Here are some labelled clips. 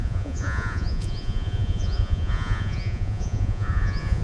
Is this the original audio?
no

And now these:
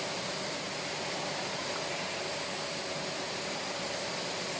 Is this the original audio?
yes